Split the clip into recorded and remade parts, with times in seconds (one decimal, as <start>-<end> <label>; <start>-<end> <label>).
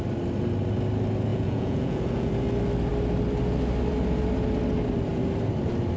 0.0-1.3 recorded; 1.3-2.3 remade; 2.3-6.0 recorded